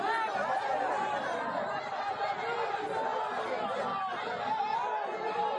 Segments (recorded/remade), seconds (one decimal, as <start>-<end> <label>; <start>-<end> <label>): 0.0-1.0 recorded; 1.0-1.8 remade; 1.8-5.6 recorded